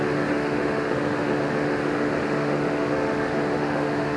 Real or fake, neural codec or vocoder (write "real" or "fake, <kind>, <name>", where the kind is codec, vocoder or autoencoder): fake, autoencoder, DAC-VAE